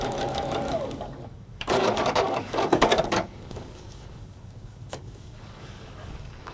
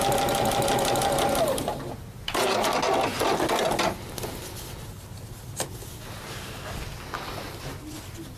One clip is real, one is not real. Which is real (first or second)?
second